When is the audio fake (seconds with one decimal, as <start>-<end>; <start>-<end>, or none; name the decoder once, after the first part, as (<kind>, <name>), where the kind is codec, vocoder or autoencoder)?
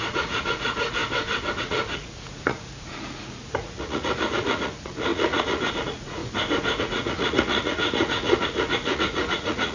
0.0-1.0 (vocoder, Vocos); 1.6-6.2; 6.8-9.7